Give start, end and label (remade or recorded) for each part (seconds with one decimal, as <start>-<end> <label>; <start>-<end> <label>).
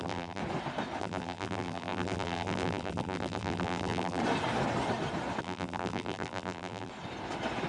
0.0-0.4 remade; 0.4-1.0 recorded; 1.0-4.2 remade; 4.2-5.4 recorded; 5.4-6.9 remade; 6.9-7.7 recorded